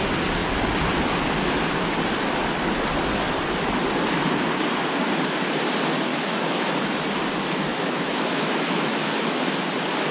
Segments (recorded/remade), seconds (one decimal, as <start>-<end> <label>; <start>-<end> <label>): 0.0-6.1 recorded; 6.1-6.7 remade; 6.7-7.7 recorded; 7.7-9.4 remade; 9.4-10.1 recorded